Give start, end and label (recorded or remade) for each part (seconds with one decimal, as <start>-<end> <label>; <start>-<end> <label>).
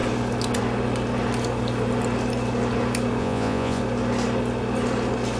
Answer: 0.0-3.2 recorded; 3.2-3.8 remade; 3.8-5.4 recorded